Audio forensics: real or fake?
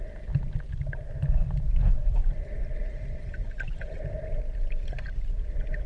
real